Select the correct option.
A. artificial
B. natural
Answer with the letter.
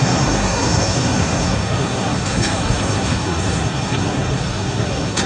A